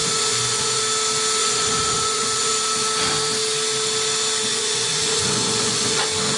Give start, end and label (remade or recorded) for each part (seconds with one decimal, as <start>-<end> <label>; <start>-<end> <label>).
0.0-0.8 remade; 0.8-1.4 recorded; 1.4-2.5 remade; 2.5-4.5 recorded; 4.5-6.0 remade; 6.0-6.4 recorded